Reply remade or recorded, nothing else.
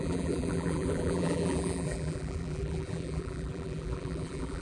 remade